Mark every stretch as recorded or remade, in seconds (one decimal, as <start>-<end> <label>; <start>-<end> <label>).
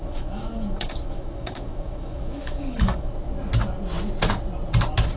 0.0-3.1 remade; 3.1-5.2 recorded